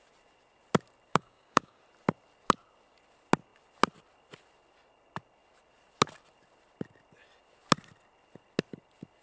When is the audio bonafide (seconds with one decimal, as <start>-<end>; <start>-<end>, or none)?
0.0-1.1; 1.8-9.2